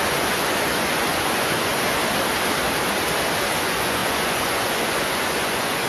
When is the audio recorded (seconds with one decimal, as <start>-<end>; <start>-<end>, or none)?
2.0-3.6